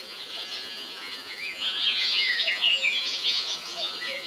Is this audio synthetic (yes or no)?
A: yes